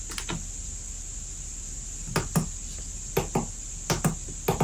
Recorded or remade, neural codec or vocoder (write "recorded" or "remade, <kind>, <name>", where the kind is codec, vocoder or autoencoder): recorded